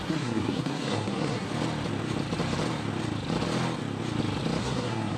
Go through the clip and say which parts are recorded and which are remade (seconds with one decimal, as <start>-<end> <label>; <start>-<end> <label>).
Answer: 0.0-1.5 remade; 1.5-4.6 recorded; 4.6-5.2 remade